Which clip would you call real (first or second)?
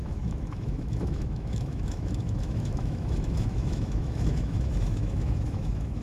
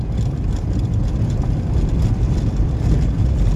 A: second